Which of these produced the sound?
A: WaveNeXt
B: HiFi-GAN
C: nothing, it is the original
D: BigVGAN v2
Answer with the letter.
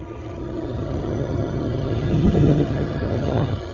B